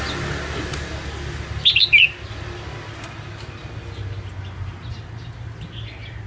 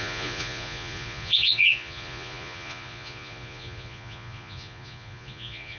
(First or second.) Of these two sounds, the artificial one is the second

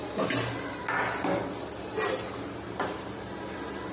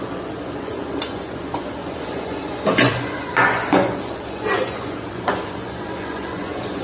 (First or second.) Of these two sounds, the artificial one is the second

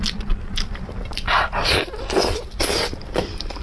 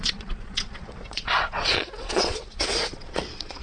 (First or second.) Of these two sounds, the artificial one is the second